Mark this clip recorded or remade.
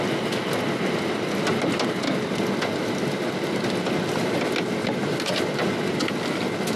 recorded